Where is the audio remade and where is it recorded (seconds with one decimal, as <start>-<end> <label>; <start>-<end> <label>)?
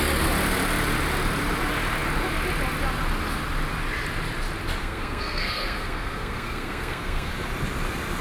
0.0-4.8 recorded; 4.8-7.3 remade; 7.3-8.2 recorded